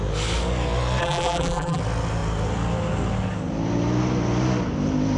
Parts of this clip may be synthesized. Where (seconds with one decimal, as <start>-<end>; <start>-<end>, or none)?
1.0-1.8